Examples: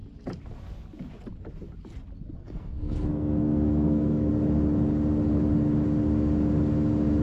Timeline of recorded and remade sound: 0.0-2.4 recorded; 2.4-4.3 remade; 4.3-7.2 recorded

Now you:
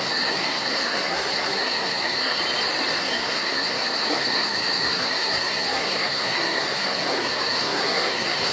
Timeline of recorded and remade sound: 0.0-2.4 remade; 2.4-3.0 recorded; 3.0-8.5 remade

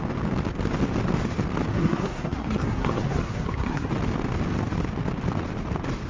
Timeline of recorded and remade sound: 0.0-1.7 recorded; 1.7-3.9 remade; 3.9-6.1 recorded

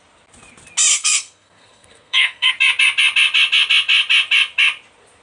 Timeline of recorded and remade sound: 0.0-0.9 recorded; 0.9-2.5 remade; 2.5-5.2 recorded

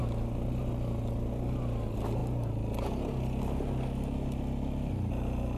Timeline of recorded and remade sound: 0.0-5.6 recorded